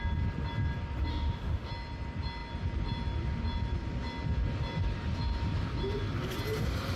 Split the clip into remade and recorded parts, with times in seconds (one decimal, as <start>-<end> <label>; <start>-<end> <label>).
0.0-1.1 recorded; 1.1-1.7 remade; 1.7-7.0 recorded